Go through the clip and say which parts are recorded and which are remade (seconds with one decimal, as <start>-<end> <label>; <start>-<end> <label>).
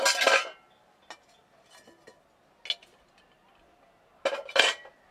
0.0-5.1 recorded